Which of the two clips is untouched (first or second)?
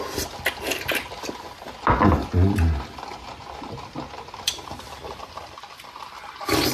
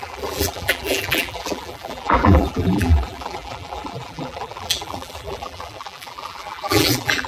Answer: first